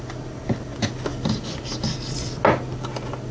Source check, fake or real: real